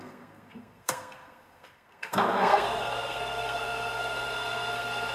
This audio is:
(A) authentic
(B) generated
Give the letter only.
B